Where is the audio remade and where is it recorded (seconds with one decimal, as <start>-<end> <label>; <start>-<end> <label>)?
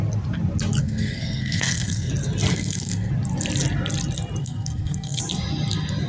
0.0-0.8 recorded; 0.8-2.1 remade; 2.1-2.5 recorded; 2.5-3.1 remade; 3.1-4.4 recorded; 4.4-5.2 remade; 5.2-6.1 recorded